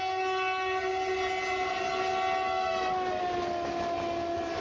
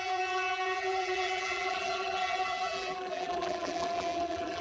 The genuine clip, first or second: first